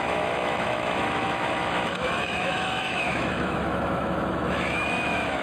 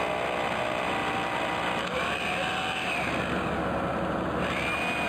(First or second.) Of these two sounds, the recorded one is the second